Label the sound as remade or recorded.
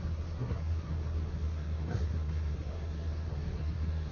remade